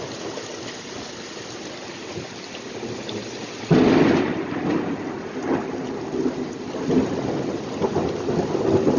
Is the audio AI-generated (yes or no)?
no